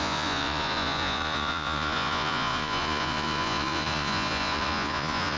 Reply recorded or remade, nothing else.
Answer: remade